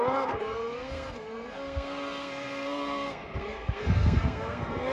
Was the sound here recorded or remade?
remade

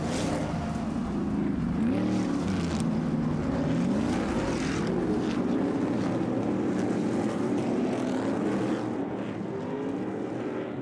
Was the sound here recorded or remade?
recorded